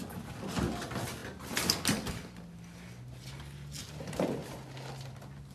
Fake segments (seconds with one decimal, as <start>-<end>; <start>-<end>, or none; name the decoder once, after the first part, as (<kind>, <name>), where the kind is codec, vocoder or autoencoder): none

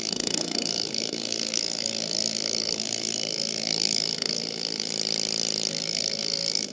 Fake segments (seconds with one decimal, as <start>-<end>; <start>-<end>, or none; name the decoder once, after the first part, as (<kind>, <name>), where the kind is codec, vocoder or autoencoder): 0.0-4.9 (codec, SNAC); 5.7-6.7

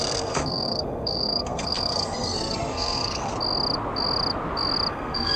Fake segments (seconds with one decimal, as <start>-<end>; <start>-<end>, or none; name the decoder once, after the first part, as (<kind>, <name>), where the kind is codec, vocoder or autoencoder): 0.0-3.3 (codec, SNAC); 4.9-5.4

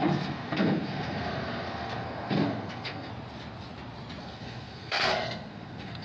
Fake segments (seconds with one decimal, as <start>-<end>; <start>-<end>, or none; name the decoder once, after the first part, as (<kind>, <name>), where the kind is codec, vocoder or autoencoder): 0.0-3.1 (codec, SNAC); 4.2-6.0